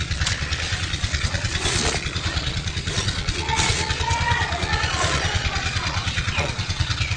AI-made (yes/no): yes